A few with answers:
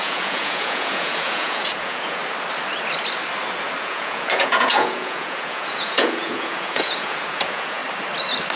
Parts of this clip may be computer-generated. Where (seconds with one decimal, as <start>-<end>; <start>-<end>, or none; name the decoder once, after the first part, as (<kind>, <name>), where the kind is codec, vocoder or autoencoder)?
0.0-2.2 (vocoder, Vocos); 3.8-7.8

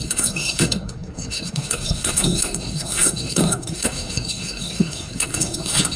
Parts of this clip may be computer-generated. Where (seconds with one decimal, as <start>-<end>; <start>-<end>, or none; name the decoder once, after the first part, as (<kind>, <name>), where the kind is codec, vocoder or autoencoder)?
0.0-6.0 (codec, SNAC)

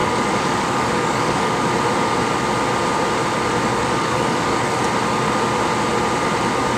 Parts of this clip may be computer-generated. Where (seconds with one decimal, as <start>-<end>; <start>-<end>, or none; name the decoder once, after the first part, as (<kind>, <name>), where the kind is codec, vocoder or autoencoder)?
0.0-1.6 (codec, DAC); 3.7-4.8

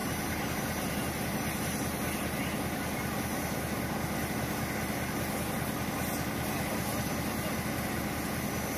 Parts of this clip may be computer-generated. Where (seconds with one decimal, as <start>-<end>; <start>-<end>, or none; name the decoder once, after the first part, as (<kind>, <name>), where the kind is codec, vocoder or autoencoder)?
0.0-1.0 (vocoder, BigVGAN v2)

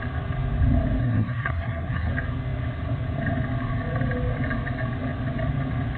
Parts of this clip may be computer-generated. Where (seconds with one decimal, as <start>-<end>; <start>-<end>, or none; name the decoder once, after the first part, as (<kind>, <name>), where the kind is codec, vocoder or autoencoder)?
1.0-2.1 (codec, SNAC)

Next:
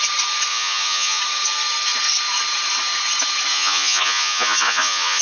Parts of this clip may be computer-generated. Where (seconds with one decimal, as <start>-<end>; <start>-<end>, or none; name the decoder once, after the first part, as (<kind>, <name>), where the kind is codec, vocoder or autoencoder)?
0.5-1.2 (vocoder, Vocos); 3.5-5.2

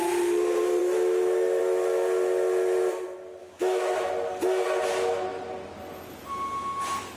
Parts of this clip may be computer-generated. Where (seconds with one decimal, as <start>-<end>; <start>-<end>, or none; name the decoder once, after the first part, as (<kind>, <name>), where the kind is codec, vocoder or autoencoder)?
0.8-1.6 (autoencoder, DAC-VAE); 3.4-4.1